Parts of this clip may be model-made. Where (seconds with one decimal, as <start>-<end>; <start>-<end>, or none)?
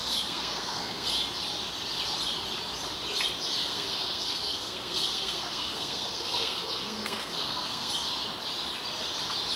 0.0-1.1; 3.6-7.9